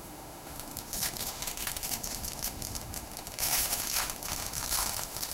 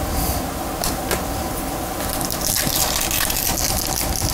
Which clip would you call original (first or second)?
second